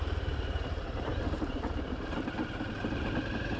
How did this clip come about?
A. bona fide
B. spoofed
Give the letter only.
B